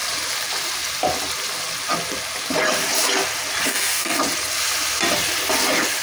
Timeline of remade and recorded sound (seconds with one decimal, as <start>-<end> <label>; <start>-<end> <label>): 0.0-3.7 recorded; 3.7-4.2 remade; 4.2-6.0 recorded